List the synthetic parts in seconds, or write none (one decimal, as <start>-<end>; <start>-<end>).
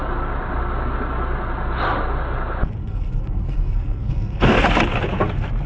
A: 2.8-4.6